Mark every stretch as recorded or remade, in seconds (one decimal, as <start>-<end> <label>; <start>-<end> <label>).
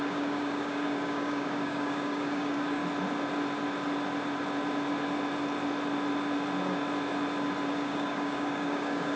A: 0.0-2.8 remade; 2.8-7.7 recorded; 7.7-9.2 remade